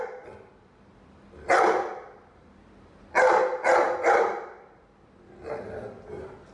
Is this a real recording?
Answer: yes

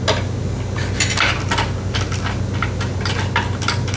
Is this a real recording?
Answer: yes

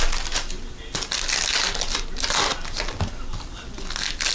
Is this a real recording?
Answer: yes